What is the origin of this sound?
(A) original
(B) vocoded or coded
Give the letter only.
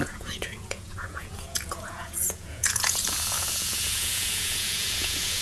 B